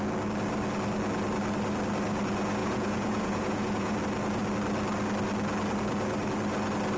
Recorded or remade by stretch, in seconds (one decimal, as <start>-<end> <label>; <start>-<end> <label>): 0.0-2.6 recorded; 2.6-4.0 remade; 4.0-7.0 recorded